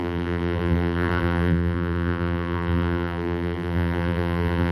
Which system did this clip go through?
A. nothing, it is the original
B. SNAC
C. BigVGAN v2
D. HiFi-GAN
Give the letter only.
C